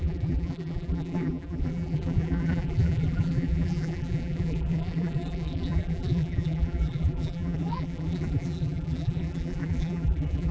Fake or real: fake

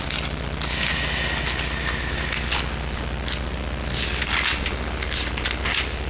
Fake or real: real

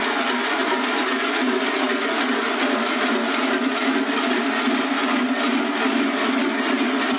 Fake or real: real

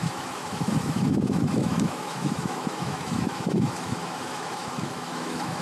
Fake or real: fake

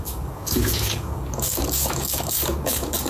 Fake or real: fake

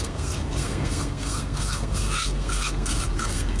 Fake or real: fake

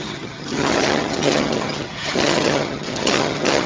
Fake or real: fake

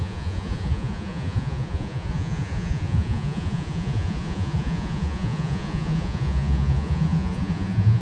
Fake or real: fake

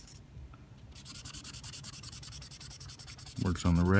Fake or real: fake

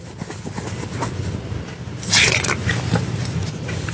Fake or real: real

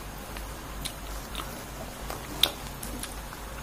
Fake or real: real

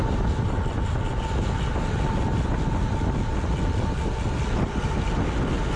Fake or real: real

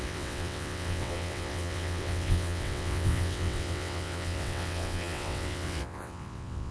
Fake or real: fake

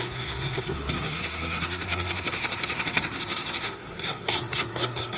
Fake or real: fake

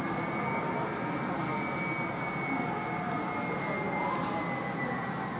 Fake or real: real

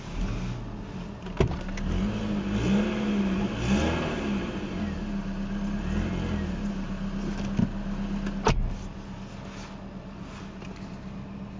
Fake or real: real